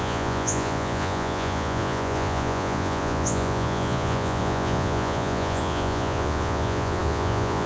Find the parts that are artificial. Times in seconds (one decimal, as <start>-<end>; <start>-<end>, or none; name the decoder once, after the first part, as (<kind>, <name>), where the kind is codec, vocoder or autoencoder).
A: 0.0-7.7 (vocoder, Vocos)